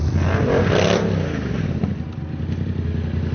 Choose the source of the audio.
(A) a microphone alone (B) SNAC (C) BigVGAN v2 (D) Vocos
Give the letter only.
A